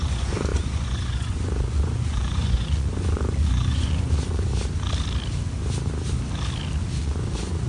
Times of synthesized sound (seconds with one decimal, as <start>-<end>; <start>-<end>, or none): 0.0-4.5; 7.0-7.7

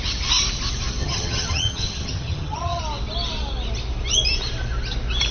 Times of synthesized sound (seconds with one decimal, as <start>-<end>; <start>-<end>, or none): 1.0-2.8

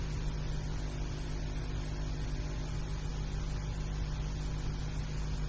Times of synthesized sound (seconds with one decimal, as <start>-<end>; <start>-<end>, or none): none

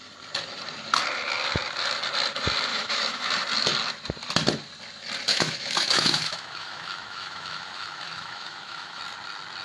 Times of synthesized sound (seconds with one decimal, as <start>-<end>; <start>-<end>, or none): 2.7-3.3; 5.3-9.0

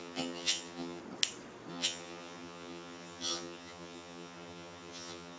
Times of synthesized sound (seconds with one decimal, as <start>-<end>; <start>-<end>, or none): 0.0-1.0; 1.7-5.4

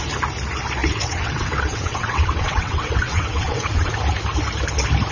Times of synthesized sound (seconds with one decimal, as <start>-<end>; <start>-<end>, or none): 0.8-3.9

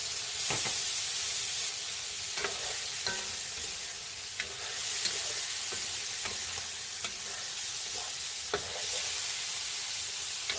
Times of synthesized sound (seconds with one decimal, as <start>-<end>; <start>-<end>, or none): none

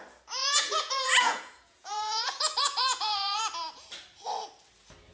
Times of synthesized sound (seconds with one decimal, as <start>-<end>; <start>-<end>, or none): 0.4-3.4